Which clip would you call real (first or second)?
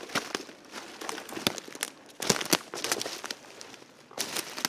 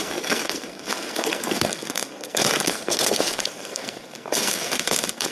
first